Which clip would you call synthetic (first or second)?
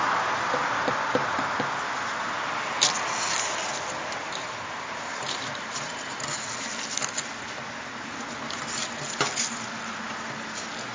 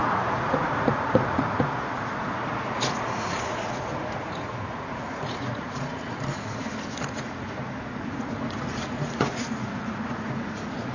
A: second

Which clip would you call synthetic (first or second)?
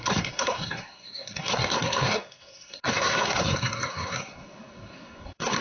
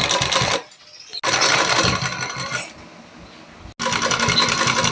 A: first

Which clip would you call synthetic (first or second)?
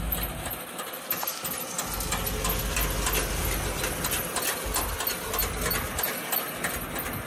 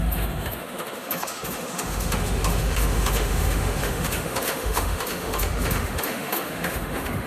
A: second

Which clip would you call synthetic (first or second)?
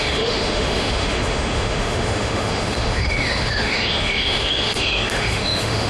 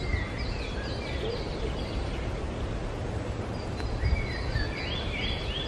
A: first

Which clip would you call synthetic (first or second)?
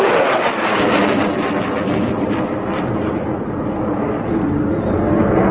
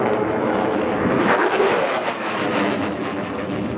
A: second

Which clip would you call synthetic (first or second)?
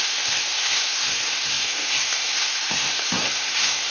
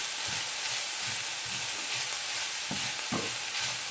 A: first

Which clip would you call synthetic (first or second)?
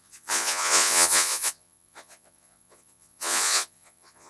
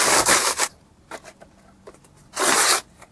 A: first